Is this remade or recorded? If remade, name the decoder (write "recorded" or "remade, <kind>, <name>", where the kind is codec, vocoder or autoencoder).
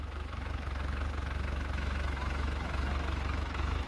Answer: remade, autoencoder, DAC-VAE